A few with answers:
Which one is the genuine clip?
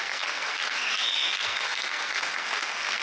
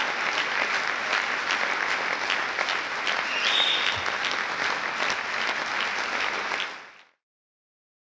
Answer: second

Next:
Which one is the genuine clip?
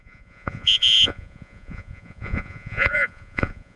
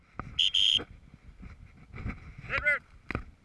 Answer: second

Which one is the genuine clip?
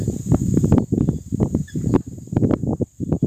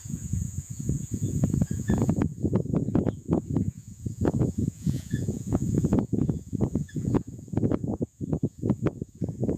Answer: first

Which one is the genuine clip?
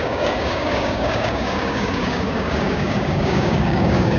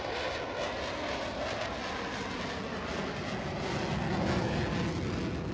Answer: second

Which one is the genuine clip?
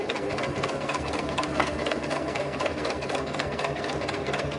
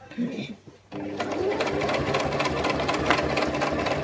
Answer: second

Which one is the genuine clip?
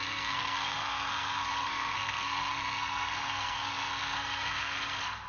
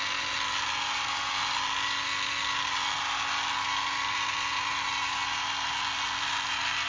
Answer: second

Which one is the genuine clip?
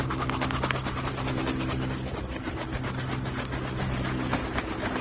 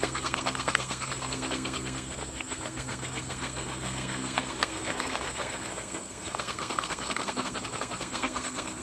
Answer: first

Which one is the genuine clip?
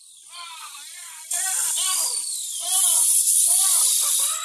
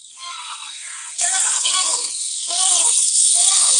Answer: first